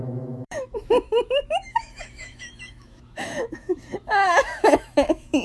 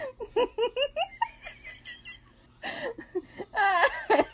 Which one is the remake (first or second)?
first